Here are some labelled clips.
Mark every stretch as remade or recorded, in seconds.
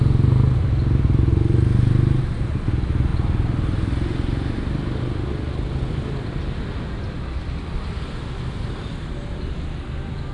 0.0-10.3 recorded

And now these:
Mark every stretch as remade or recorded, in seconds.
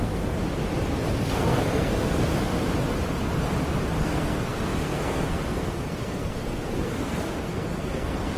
0.0-0.4 remade; 0.4-1.2 recorded; 1.2-2.3 remade; 2.3-4.0 recorded; 4.0-8.4 remade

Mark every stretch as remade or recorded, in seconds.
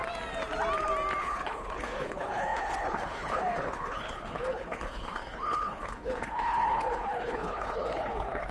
0.0-1.2 recorded; 1.2-8.5 remade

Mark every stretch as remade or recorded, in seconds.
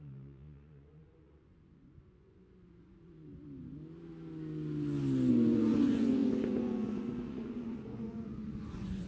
0.0-3.3 remade; 3.3-5.3 recorded; 5.3-9.1 remade